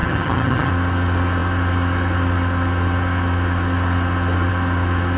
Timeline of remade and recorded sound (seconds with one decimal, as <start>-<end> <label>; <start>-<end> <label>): 0.0-0.7 remade; 0.7-5.2 recorded